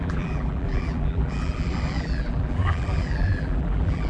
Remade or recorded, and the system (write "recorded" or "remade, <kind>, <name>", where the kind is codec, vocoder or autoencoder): remade, vocoder, BigVGAN v2